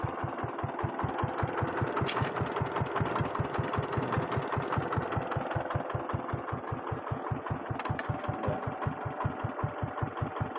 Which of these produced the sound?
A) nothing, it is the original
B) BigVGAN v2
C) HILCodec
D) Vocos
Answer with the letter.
A